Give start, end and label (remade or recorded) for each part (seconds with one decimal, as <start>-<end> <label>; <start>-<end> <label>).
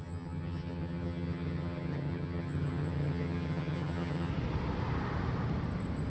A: 0.0-4.3 remade; 4.3-6.1 recorded